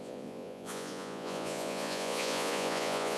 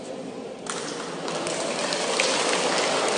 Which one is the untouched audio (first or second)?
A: second